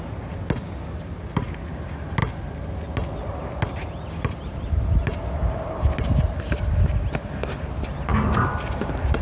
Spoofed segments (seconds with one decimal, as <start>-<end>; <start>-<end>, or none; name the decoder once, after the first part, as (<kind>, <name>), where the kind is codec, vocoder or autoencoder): none